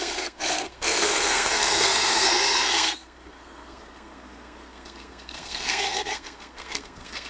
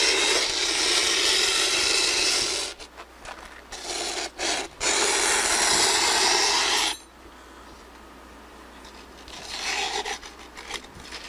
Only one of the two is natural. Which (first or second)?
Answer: second